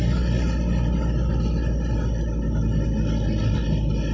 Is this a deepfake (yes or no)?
no